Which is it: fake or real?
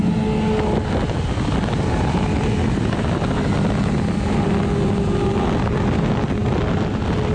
real